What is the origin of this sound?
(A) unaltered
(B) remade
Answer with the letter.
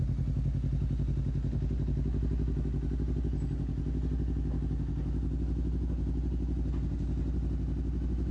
A